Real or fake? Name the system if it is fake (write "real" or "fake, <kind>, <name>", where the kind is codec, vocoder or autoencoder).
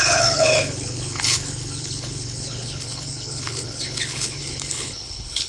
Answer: fake, codec, HILCodec